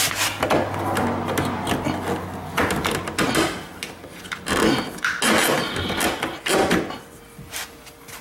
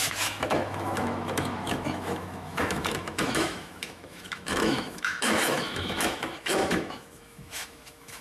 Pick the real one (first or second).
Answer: first